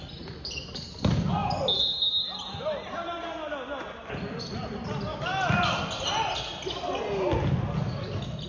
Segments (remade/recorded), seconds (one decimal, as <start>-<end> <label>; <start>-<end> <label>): 0.0-8.5 recorded